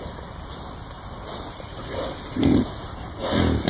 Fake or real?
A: real